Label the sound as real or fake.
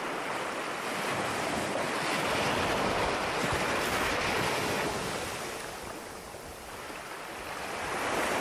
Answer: real